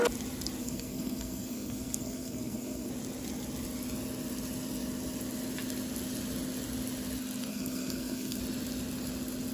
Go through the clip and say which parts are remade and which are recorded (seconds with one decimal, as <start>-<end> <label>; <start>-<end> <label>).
0.0-0.6 recorded; 0.6-2.9 remade; 2.9-7.5 recorded; 7.5-8.4 remade; 8.4-9.5 recorded